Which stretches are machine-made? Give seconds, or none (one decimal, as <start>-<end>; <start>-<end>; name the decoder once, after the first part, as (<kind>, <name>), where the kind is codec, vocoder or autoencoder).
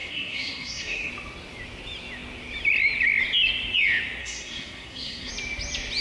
0.0-1.1 (codec, SNAC); 4.2-5.3